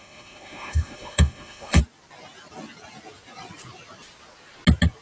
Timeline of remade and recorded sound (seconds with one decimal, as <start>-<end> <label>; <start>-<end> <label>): 0.0-1.8 remade; 1.8-5.0 recorded